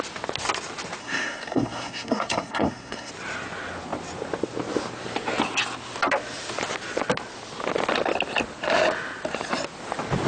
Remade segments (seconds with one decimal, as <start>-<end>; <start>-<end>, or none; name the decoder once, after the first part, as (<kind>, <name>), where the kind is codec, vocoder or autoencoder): 1.0-3.1 (codec, SNAC)